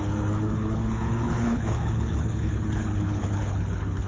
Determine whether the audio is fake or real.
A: fake